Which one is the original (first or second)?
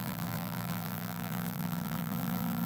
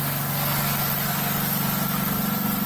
second